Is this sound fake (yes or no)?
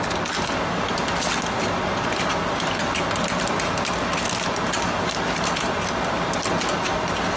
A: no